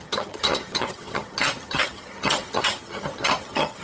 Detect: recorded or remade remade